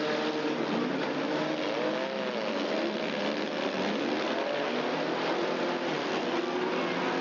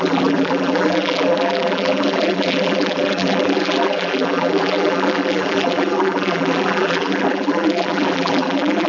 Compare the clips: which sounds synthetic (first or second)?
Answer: second